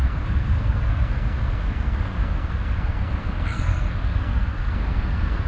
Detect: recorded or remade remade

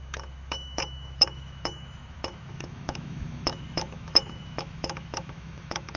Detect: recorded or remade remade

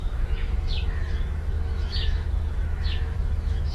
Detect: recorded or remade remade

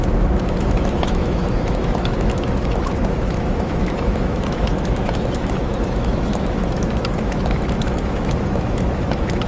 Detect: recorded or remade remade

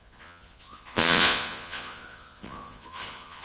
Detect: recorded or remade remade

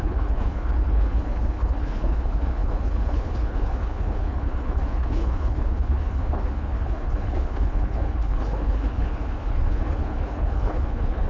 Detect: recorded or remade remade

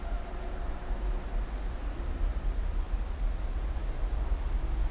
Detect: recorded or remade recorded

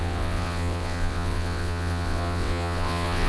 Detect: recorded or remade remade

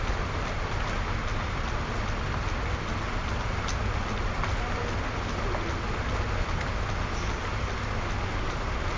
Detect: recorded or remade recorded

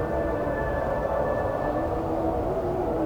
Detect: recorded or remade recorded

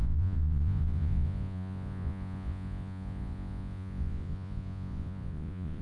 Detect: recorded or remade remade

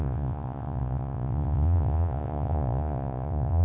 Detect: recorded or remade remade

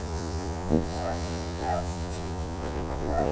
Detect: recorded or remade remade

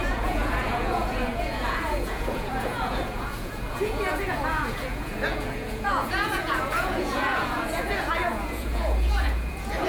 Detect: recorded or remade remade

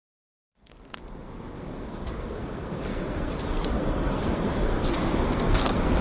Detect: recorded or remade remade